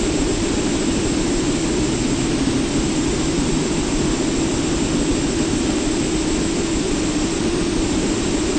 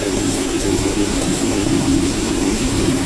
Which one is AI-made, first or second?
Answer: second